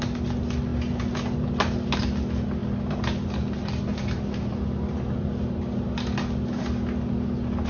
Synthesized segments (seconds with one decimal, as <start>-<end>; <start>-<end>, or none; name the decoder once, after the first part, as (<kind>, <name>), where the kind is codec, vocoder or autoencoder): none